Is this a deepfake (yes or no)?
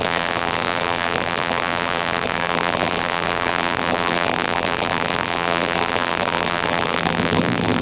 yes